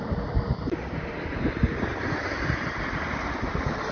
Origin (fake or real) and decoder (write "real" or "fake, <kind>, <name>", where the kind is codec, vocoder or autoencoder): real